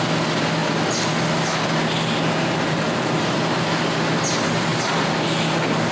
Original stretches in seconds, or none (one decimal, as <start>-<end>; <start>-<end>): 0.0-5.9